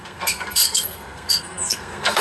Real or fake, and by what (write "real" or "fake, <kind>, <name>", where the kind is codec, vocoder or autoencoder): fake, codec, SNAC